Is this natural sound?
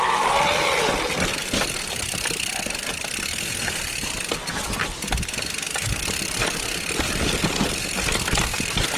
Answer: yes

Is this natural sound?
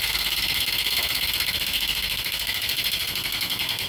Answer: no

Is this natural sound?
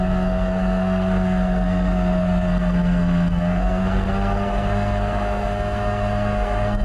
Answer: no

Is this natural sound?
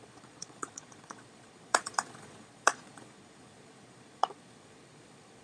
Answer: no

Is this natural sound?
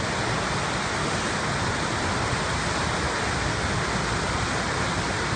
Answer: yes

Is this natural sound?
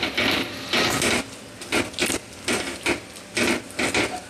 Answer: yes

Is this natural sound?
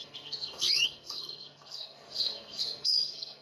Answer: no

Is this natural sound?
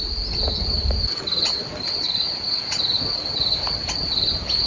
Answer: yes